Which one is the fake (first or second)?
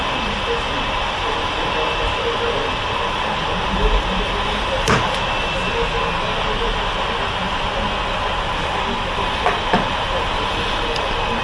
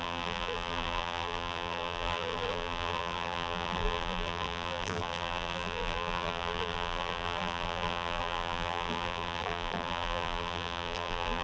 second